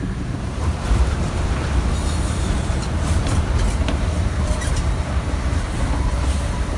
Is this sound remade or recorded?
remade